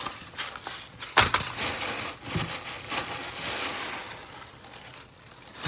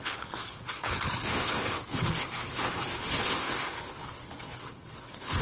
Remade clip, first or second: second